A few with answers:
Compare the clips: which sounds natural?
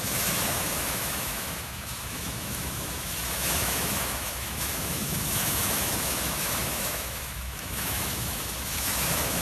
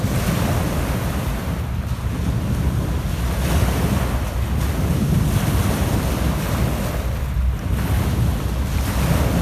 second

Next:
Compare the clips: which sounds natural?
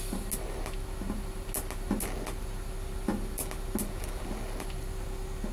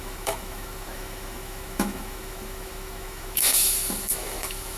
first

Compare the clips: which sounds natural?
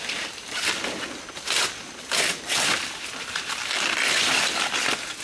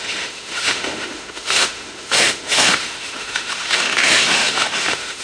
first